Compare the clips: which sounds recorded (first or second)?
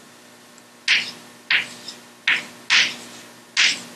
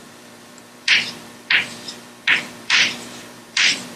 first